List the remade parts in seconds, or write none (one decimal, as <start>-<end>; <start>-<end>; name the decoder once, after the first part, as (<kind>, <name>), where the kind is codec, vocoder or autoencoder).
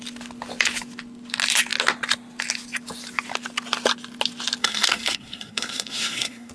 4.6-6.5 (codec, SNAC)